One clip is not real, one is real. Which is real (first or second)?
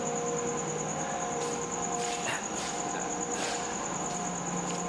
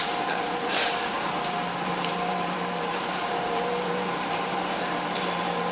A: first